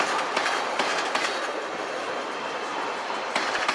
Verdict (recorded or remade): recorded